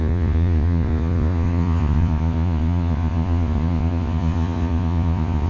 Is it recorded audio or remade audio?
remade